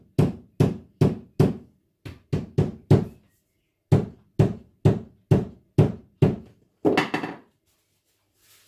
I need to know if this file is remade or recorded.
recorded